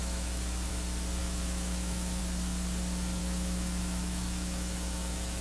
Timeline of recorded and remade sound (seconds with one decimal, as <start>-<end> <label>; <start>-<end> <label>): 0.0-0.7 remade; 0.7-1.2 recorded; 1.2-2.2 remade; 2.2-3.2 recorded; 3.2-5.4 remade